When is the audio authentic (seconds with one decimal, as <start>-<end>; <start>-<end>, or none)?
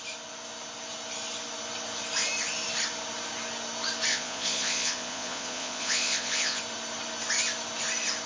0.0-4.1; 6.6-8.3